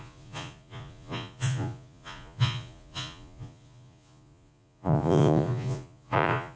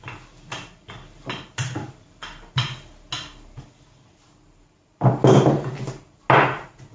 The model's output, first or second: first